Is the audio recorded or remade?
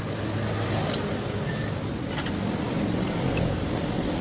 recorded